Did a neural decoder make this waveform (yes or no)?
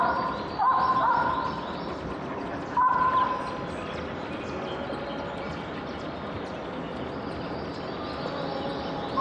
no